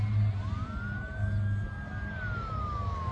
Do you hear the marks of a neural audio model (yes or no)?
no